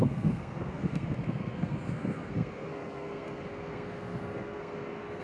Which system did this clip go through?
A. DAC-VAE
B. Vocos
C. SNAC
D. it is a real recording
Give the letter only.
C